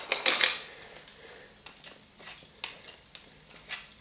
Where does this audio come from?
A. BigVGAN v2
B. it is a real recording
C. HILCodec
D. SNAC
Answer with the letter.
B